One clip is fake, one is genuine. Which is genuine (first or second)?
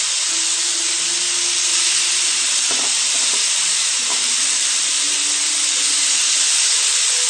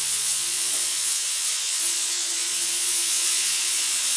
first